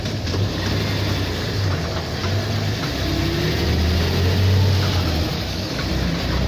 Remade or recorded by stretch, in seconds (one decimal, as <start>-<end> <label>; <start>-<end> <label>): 0.0-5.3 recorded; 5.3-5.9 remade; 5.9-6.5 recorded